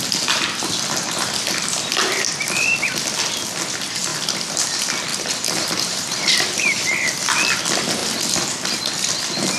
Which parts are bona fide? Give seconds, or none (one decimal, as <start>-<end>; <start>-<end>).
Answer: 0.0-5.1; 6.9-9.6